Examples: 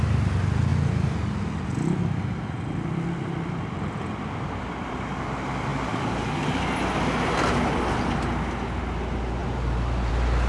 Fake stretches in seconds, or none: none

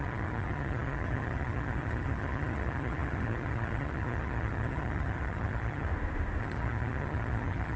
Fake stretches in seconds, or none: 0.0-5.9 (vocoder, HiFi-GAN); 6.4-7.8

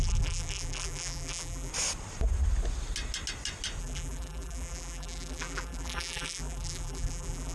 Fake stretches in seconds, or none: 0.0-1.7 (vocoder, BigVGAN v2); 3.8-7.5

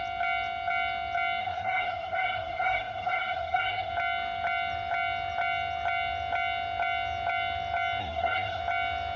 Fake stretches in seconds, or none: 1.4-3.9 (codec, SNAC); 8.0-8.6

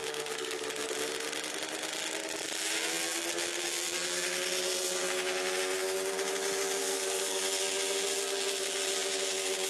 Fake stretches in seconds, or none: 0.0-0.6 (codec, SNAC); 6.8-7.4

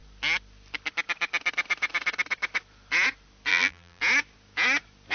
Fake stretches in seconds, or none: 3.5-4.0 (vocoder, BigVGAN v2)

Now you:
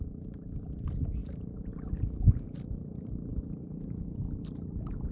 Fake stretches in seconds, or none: none

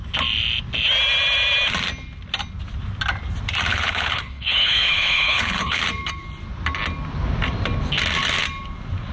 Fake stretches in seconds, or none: 3.7-5.8 (codec, HILCodec)